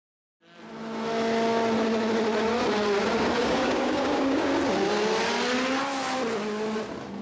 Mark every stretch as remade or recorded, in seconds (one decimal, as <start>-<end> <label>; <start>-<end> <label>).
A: 0.0-3.4 recorded; 3.4-4.5 remade; 4.5-7.2 recorded